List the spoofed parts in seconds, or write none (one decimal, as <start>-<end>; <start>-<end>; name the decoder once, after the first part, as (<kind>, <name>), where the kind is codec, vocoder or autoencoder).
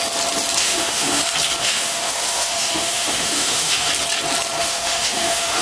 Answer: 0.6-1.2 (autoencoder, DAC-VAE); 1.6-3.9; 4.6-5.6